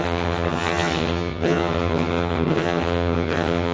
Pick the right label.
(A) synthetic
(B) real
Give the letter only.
A